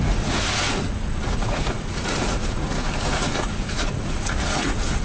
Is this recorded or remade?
remade